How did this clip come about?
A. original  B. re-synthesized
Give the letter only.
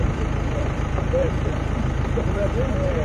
B